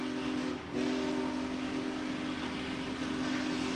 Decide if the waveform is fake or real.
real